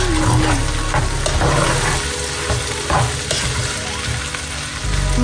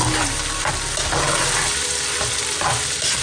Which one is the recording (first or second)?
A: first